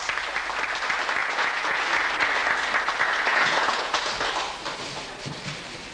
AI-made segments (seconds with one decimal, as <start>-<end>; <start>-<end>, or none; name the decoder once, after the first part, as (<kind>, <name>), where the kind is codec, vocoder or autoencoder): 1.2-1.8 (vocoder, Vocos); 3.3-4.1